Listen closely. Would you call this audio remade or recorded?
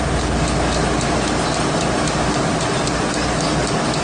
recorded